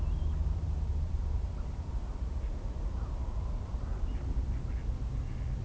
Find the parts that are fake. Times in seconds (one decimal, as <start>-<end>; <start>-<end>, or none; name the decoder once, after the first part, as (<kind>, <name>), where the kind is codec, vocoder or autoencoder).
0.4-1.9 (vocoder, BigVGAN v2)